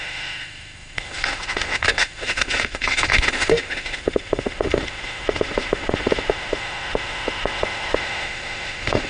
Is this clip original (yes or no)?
no